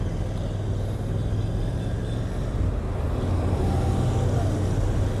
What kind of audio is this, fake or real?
real